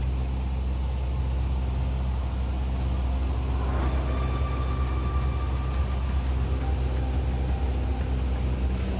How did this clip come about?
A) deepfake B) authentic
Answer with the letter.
B